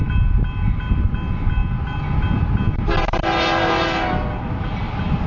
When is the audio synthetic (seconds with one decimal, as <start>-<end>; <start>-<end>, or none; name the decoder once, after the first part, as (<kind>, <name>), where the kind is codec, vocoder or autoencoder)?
none